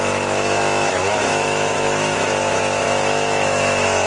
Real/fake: fake